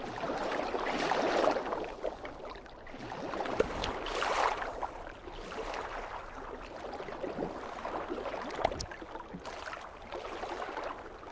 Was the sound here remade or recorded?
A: recorded